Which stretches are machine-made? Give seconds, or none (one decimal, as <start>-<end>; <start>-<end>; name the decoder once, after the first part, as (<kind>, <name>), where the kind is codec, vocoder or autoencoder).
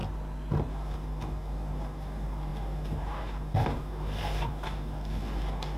0.7-5.8 (codec, DAC)